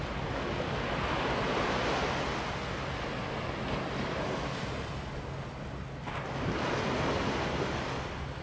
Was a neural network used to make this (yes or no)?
no